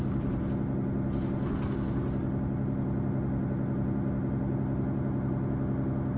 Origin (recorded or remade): recorded